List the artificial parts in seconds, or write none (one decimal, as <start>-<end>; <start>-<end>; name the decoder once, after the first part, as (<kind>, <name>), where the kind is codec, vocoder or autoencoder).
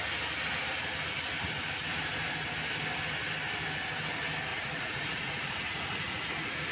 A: 4.5-6.7 (vocoder, Vocos)